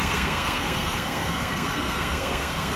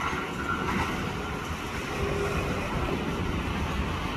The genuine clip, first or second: second